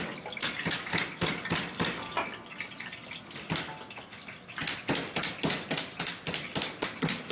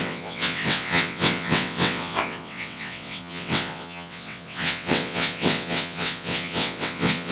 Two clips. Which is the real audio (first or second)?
first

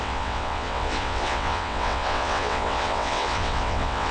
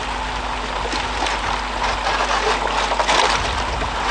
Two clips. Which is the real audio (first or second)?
second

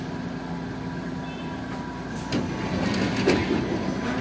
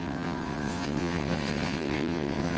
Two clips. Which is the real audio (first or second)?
first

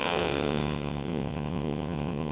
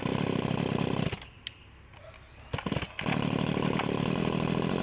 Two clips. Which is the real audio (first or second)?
second